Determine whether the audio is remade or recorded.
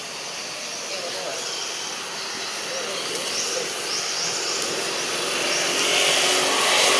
recorded